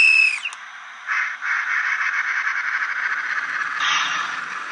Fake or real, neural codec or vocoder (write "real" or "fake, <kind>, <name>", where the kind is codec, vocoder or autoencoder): real